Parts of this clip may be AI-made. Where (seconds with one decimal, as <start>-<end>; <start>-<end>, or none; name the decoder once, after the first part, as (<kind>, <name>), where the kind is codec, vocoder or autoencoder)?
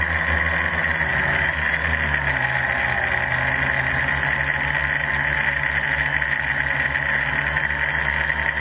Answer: none